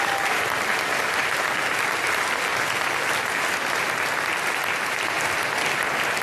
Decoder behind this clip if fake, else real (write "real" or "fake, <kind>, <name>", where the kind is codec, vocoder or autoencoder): real